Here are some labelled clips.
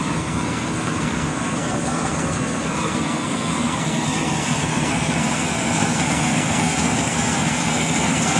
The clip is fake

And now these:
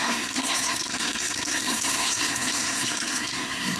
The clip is fake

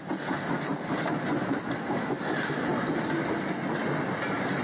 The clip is real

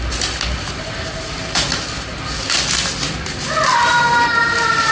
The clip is real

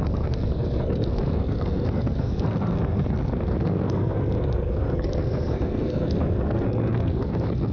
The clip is fake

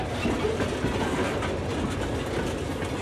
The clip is real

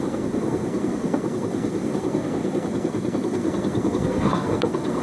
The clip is fake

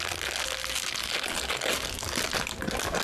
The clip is real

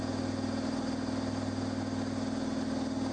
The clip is real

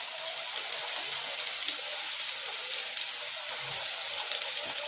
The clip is real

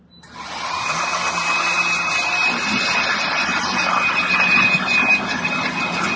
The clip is real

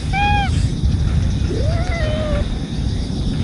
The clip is real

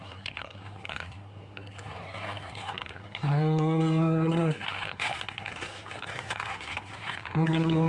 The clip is fake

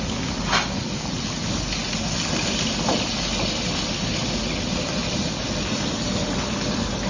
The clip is real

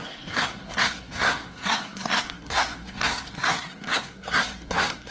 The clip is fake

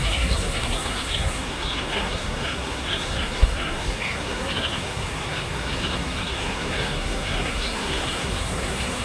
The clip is fake